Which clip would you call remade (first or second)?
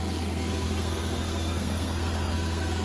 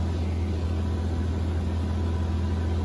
first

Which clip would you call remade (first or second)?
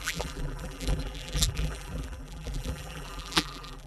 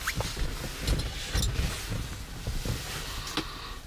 first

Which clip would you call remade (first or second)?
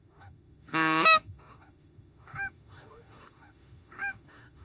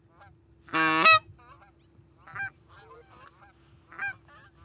first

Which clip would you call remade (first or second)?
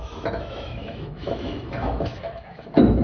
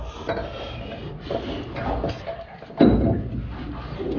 first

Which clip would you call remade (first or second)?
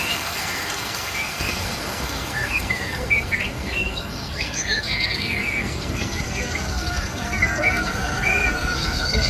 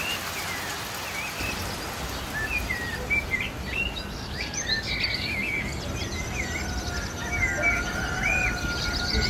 first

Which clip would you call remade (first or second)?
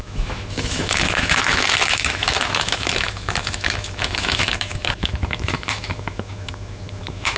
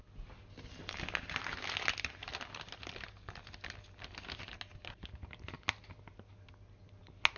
first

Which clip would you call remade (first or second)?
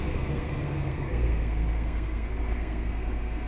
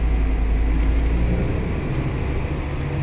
first